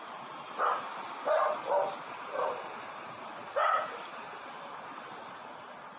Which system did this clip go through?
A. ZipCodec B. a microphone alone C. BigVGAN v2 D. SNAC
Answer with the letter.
B